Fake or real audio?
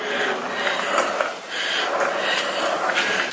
real